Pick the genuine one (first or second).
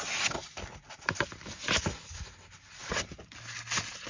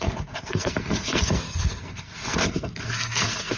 first